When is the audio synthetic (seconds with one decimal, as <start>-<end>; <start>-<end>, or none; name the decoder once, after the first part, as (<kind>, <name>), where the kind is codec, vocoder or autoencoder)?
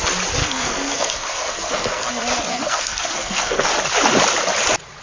0.4-2.1 (codec, SNAC); 2.5-3.7